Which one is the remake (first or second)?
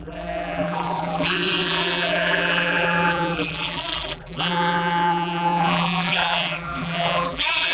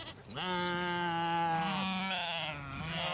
first